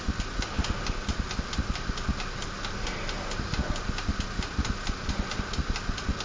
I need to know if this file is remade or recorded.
recorded